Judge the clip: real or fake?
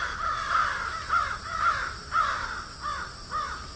real